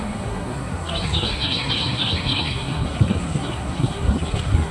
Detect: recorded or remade remade